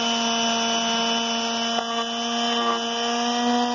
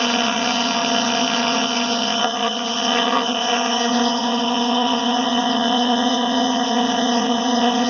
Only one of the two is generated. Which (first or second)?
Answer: second